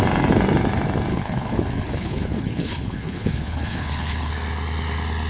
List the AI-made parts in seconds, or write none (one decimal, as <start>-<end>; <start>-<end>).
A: 1.1-4.3